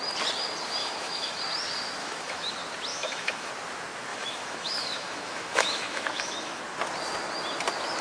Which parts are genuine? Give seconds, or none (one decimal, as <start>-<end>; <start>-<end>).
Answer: 0.0-0.8; 1.4-2.0; 2.5-2.9; 3.5-4.1; 6.6-8.0